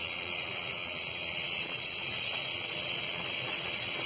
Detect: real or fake fake